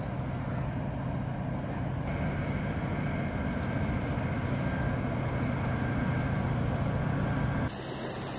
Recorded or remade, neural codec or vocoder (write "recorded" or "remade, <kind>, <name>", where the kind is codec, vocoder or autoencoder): recorded